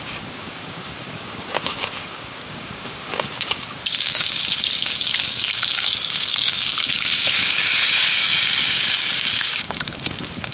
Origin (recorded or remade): remade